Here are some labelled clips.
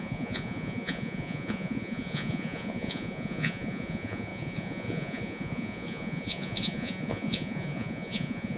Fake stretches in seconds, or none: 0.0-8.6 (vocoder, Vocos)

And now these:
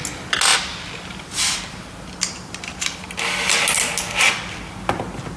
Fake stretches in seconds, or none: none

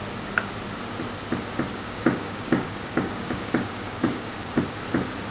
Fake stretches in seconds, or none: 1.7-4.6 (codec, DAC)